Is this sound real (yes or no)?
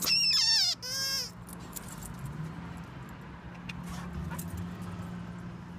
yes